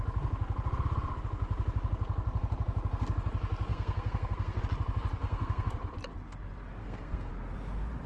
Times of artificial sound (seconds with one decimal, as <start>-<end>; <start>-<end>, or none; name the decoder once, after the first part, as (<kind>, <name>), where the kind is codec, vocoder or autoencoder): 3.7-4.6 (codec, SNAC); 5.2-5.7; 6.8-7.3